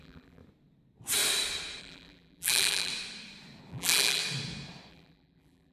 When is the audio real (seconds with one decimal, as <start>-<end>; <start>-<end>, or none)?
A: 0.4-1.8; 2.9-3.7; 4.2-4.9